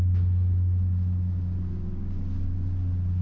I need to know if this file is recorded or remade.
recorded